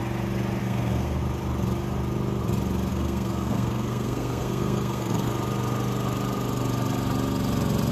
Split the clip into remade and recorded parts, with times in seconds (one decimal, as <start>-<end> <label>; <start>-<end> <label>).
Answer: 0.0-0.6 recorded; 0.6-1.2 remade; 1.2-2.9 recorded; 2.9-5.3 remade; 5.3-7.9 recorded